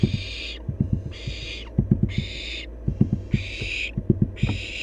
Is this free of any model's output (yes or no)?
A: yes